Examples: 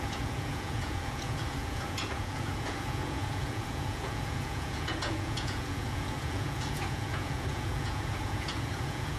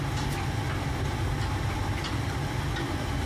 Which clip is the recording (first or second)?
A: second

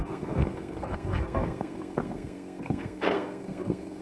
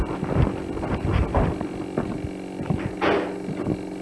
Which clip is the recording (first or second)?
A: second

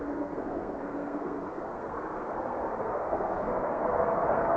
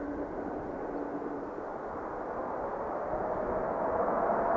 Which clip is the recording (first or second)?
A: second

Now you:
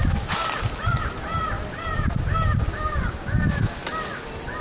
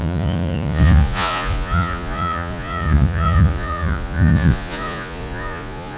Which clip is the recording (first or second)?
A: first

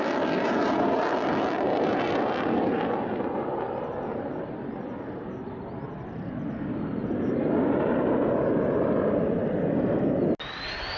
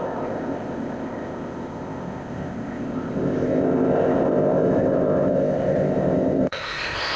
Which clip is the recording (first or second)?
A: first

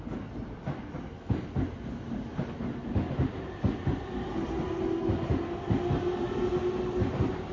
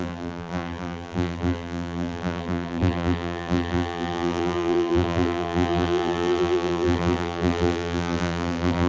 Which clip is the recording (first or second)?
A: first